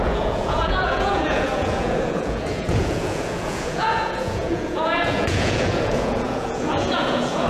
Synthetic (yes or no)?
yes